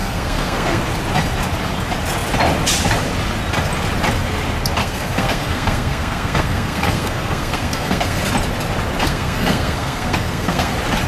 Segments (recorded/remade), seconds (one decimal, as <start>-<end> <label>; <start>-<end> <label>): 0.0-0.8 remade; 0.8-4.8 recorded; 4.8-8.2 remade; 8.2-9.0 recorded; 9.0-10.7 remade; 10.7-11.1 recorded